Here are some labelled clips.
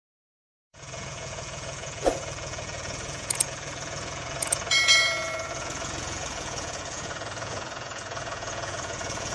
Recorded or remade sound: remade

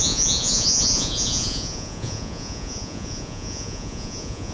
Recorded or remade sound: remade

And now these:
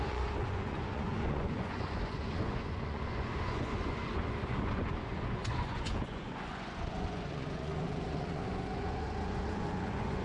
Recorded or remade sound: remade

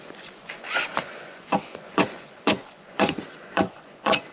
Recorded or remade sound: remade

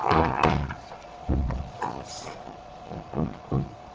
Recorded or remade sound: remade